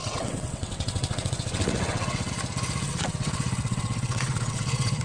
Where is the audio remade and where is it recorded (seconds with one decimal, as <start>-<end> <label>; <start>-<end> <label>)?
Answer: 0.0-2.3 remade; 2.3-2.8 recorded; 2.8-5.0 remade